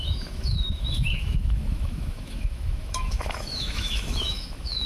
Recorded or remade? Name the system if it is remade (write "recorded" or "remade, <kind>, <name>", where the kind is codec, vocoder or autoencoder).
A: remade, autoencoder, DAC-VAE